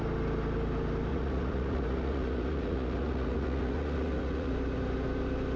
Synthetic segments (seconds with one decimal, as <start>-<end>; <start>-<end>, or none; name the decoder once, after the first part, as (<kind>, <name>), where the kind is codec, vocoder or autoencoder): 1.1-4.5 (vocoder, Vocos)